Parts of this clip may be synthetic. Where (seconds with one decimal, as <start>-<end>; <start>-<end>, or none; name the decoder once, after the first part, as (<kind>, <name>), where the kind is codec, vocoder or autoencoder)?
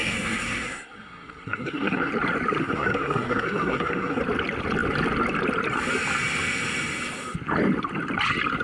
0.0-2.1 (codec, SNAC); 2.6-4.2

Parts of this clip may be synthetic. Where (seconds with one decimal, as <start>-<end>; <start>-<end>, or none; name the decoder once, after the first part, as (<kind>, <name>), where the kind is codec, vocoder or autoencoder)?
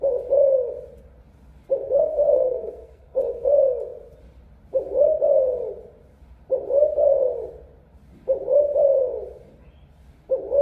1.8-3.5 (codec, SNAC)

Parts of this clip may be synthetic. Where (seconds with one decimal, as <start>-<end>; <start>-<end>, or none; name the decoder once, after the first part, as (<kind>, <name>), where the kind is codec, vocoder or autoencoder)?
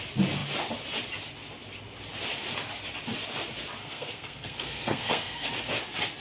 3.8-5.5 (codec, SNAC)